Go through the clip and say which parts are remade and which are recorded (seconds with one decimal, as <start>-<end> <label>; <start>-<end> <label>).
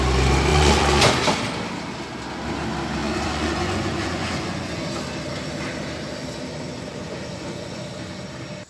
0.0-0.5 recorded; 0.5-1.1 remade; 1.1-3.0 recorded; 3.0-4.9 remade; 4.9-6.5 recorded; 6.5-7.8 remade; 7.8-8.7 recorded